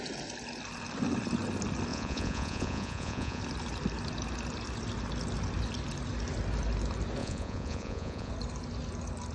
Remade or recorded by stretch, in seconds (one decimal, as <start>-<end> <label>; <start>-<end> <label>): 0.0-1.9 recorded; 1.9-3.4 remade; 3.4-7.2 recorded; 7.2-8.3 remade; 8.3-9.3 recorded